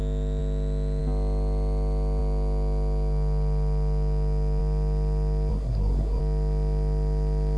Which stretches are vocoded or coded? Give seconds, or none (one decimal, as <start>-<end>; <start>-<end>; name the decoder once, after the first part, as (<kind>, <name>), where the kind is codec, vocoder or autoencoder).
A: 5.5-6.2 (codec, SNAC)